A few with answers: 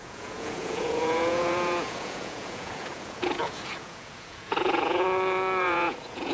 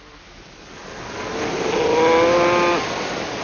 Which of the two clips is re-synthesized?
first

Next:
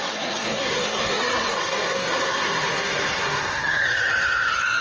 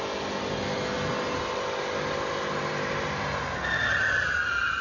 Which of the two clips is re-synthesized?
first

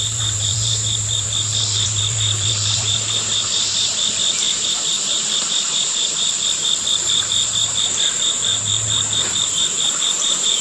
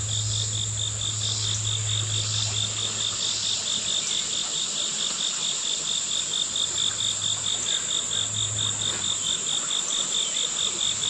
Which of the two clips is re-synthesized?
first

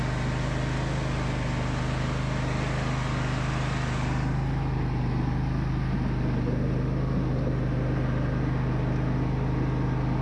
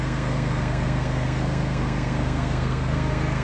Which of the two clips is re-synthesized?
second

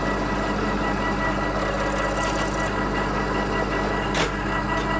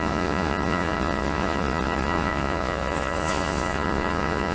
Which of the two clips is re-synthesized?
second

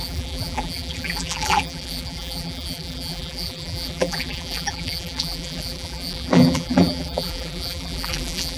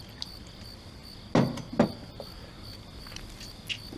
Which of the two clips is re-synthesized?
first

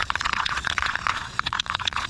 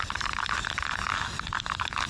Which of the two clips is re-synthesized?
first